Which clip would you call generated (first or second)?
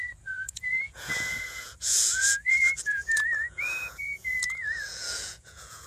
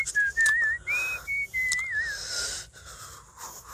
first